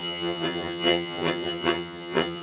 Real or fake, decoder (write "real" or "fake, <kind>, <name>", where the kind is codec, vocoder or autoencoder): fake, vocoder, HiFi-GAN